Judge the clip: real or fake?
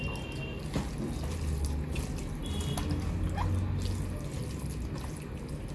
real